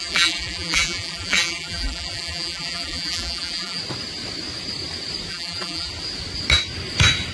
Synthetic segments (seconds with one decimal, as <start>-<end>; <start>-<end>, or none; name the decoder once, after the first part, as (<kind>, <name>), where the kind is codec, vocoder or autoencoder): 0.0-3.8 (vocoder, BigVGAN v2); 5.3-5.9